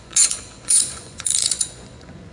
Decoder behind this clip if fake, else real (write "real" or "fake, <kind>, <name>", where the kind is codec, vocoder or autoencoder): fake, vocoder, Vocos